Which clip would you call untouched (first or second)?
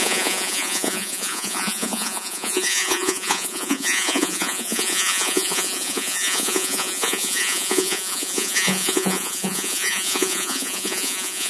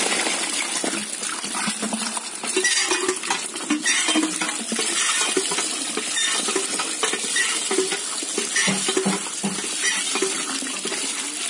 second